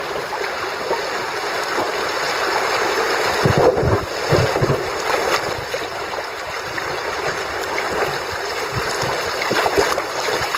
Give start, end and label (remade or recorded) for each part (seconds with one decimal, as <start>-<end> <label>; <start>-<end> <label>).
0.0-1.4 recorded; 1.4-3.8 remade; 3.8-10.6 recorded